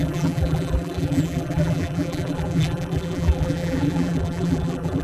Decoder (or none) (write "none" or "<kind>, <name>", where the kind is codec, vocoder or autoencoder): vocoder, BigVGAN v2